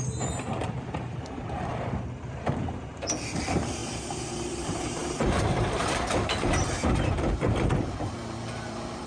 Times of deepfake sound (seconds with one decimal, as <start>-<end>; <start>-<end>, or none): 0.0-3.8; 4.3-9.1